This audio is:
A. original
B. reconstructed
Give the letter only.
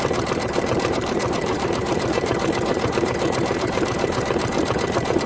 B